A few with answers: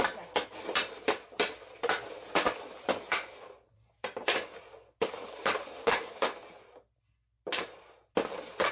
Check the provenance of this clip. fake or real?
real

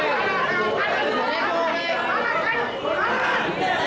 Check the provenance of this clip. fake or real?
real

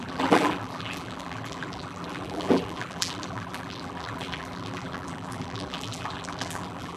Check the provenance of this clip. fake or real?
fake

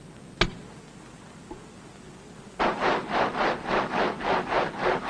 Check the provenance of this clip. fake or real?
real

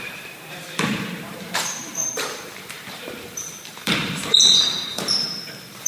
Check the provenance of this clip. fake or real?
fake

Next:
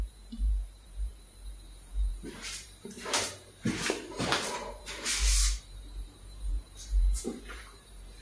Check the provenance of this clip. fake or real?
fake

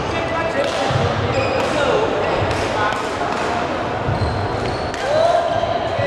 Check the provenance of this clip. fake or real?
real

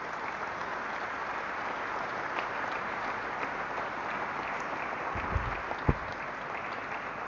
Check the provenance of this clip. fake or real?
real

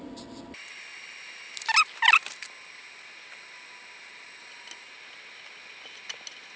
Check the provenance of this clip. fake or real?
real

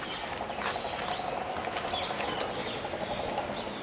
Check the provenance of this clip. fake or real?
real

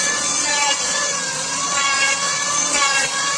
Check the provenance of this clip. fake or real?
fake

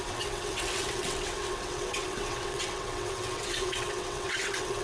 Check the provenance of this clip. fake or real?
fake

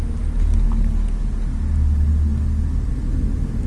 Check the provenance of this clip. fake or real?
real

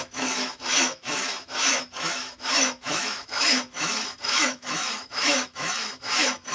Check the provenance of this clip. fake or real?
fake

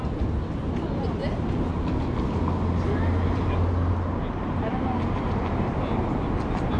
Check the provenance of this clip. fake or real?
real